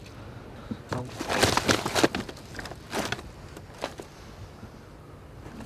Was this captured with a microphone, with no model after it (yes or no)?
yes